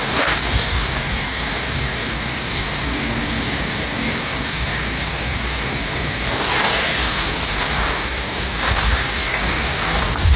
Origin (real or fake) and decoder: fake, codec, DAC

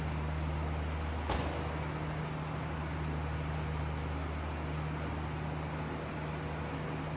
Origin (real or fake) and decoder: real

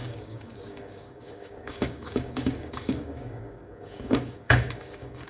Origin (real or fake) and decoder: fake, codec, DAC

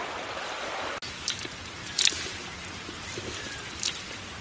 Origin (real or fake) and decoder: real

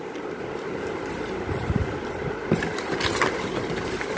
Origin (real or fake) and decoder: real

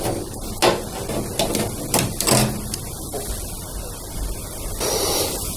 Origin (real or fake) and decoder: real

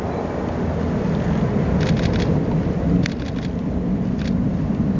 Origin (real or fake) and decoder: real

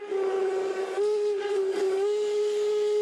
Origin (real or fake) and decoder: fake, codec, DAC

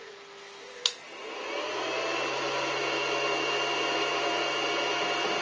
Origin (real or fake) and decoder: real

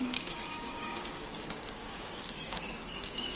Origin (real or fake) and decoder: fake, codec, DAC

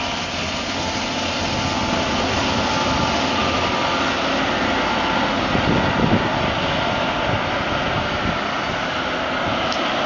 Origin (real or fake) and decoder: real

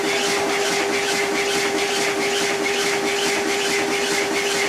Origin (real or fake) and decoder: real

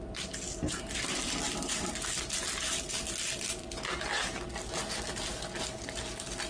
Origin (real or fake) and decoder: real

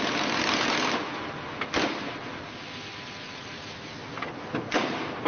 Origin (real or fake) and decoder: real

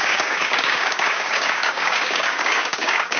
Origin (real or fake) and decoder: fake, codec, DAC